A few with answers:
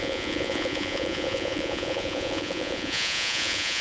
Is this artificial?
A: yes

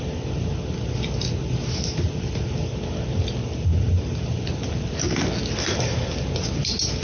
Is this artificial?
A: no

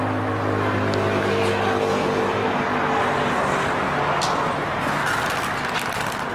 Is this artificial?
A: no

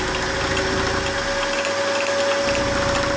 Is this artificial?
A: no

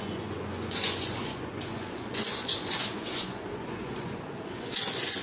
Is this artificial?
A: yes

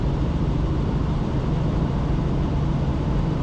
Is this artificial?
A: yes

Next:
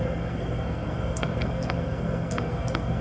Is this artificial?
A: yes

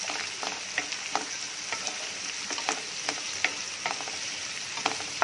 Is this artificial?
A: no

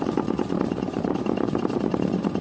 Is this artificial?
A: yes